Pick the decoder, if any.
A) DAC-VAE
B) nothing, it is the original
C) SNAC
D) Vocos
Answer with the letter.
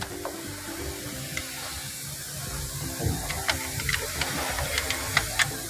B